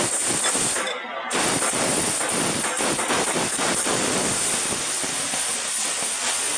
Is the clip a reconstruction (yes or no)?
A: no